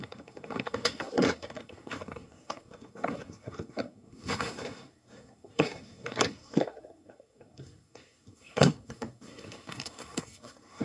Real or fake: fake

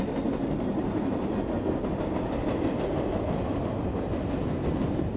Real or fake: real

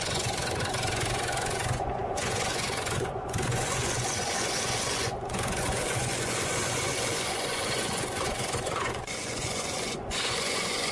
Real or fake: fake